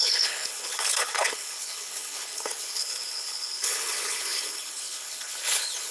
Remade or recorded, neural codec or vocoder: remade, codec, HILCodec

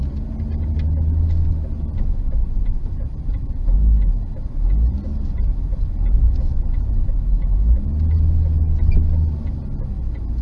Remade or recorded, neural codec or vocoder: recorded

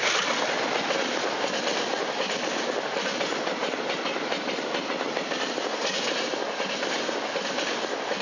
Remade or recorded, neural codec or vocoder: recorded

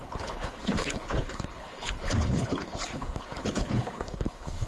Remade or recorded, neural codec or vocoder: remade, codec, HILCodec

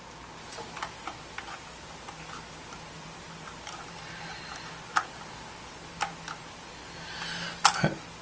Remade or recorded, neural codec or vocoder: recorded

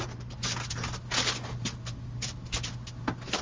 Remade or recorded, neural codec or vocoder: recorded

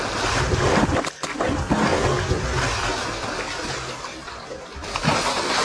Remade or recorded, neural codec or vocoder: recorded